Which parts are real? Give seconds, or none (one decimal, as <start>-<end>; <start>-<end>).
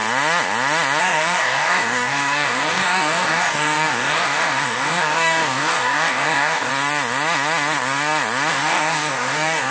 0.0-1.0; 6.7-8.5